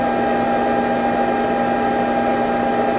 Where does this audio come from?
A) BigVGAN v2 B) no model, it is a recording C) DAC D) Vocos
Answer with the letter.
B